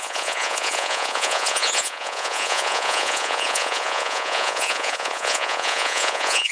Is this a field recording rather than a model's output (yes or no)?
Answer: no